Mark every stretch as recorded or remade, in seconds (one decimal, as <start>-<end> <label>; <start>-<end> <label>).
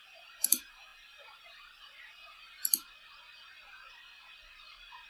0.0-2.6 remade; 2.6-5.1 recorded